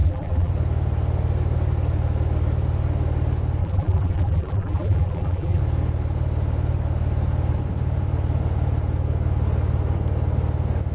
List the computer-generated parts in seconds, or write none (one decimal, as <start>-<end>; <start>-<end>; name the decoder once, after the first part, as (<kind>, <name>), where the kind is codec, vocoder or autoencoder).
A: 0.0-0.5 (vocoder, BigVGAN v2); 3.6-5.6